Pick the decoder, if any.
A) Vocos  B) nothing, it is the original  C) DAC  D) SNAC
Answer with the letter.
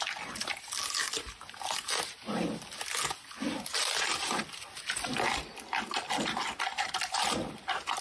B